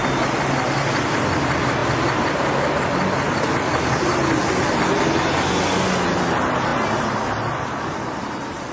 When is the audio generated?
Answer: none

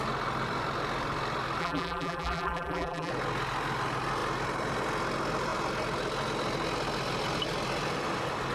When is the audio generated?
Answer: 1.6-3.1 (vocoder, BigVGAN v2)

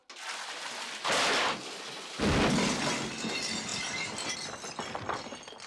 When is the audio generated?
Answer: none